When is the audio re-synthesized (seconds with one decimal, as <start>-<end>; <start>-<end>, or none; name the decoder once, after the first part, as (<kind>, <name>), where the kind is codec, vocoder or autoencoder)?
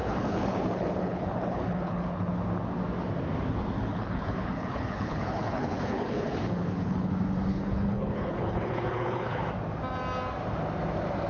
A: 0.0-2.3 (codec, HILCodec); 3.8-7.1; 7.5-9.4